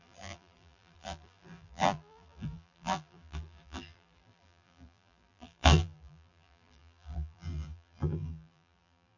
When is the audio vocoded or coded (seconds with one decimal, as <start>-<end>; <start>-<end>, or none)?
0.0-9.2